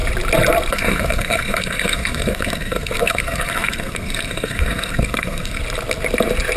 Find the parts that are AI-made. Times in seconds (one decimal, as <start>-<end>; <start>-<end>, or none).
0.7-5.6